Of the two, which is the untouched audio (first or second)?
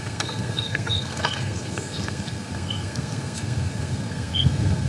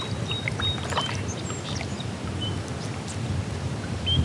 second